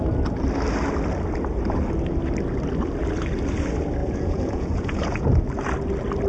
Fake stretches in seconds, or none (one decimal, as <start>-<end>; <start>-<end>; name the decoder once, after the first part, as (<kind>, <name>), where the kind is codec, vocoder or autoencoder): 4.0-5.4 (vocoder, Vocos)